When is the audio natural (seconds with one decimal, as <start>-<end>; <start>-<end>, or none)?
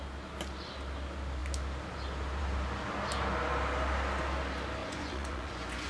0.0-4.8